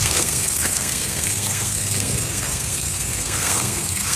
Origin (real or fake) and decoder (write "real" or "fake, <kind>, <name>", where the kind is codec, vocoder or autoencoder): fake, codec, SNAC